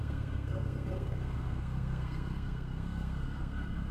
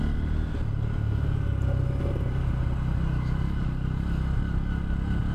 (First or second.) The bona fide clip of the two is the second